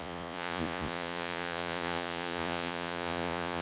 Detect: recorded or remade remade